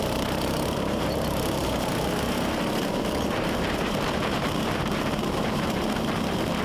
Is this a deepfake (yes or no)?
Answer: yes